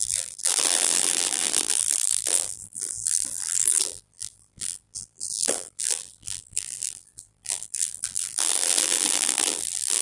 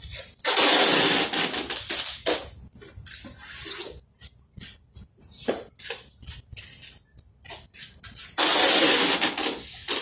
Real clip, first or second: second